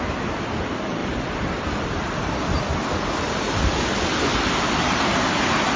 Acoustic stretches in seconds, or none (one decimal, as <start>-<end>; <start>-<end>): 0.0-1.0; 2.6-5.8

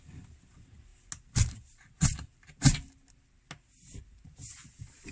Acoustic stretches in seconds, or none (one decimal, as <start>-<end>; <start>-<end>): 0.0-5.1

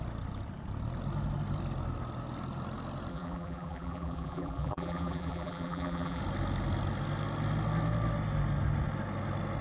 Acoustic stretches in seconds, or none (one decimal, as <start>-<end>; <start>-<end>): 0.0-3.1; 6.2-9.6

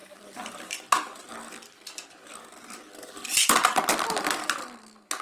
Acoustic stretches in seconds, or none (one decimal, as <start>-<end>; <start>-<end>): 3.1-5.2

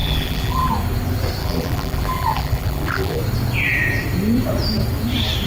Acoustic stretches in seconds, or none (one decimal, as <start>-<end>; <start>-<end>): 0.7-1.4; 3.2-5.5

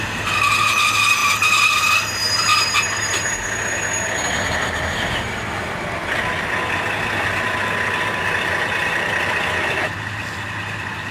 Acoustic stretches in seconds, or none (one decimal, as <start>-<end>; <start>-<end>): 0.0-11.1

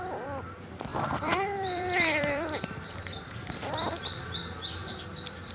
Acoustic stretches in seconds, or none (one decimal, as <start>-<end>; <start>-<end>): 0.0-0.9; 4.2-5.5

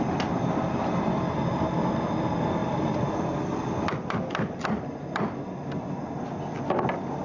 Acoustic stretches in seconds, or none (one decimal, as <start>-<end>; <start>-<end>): 0.0-2.6; 5.4-7.2